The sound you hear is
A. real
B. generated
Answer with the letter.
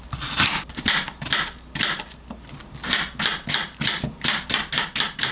A